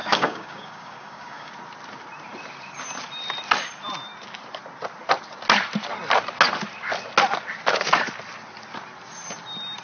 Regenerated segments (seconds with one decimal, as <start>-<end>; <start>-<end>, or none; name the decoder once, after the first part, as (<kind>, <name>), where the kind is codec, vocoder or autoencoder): 0.0-1.5 (codec, DAC)